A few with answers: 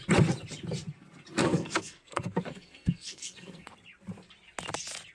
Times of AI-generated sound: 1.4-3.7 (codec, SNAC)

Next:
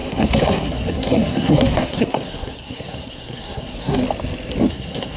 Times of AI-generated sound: 0.0-4.0 (codec, SNAC); 4.7-5.2

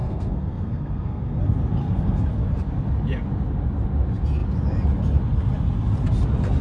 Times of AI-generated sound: 0.0-1.4 (codec, SNAC); 1.8-2.3

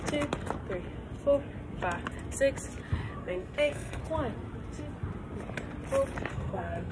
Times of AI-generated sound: 3.2-4.0 (codec, SNAC); 6.3-6.9

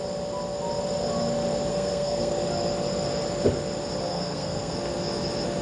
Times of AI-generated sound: 1.7-2.3 (codec, SNAC); 4.1-4.7